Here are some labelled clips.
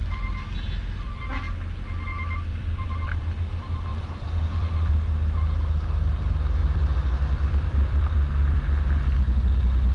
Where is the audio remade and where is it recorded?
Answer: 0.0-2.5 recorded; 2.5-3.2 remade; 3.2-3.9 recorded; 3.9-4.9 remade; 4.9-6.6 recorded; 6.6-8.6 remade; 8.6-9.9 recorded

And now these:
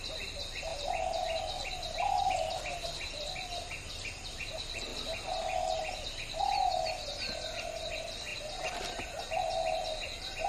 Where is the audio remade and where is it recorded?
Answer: 0.0-0.7 remade; 0.7-2.3 recorded; 2.3-4.9 remade; 4.9-6.4 recorded; 6.4-10.5 remade

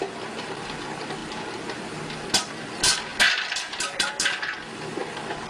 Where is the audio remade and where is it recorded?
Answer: 0.0-3.1 recorded; 3.1-4.1 remade; 4.1-5.5 recorded

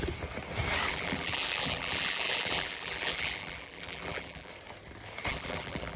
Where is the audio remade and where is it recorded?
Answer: 0.0-0.9 recorded; 0.9-4.5 remade; 4.5-5.3 recorded; 5.3-6.0 remade